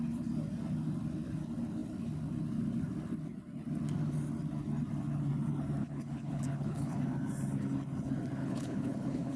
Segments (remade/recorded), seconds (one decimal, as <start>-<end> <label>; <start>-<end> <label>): 0.0-5.8 recorded; 5.8-7.0 remade; 7.0-8.4 recorded; 8.4-9.4 remade